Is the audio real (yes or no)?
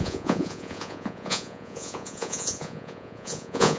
no